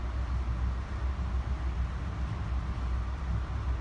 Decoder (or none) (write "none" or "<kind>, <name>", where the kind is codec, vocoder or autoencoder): none